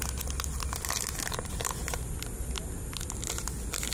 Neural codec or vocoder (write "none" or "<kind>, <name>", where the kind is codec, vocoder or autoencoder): none